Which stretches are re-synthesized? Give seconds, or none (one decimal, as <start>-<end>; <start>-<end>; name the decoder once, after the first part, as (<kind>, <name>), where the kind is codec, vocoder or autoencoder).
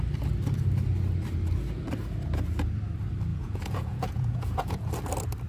3.3-4.9 (vocoder, Vocos)